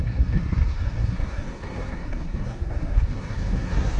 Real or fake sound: fake